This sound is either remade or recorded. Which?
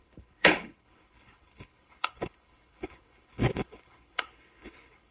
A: remade